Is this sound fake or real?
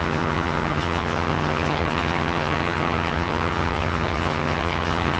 fake